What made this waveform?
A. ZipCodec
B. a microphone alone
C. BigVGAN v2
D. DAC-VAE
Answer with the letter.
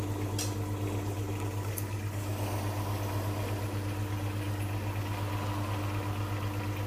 B